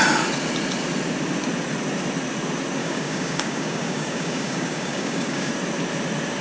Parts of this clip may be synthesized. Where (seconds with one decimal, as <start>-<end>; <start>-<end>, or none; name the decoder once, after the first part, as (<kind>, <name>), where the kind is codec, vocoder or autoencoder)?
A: 2.8-5.5 (codec, DAC)